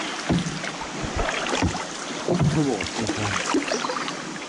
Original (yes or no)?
yes